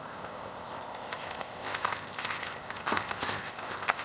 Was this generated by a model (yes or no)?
yes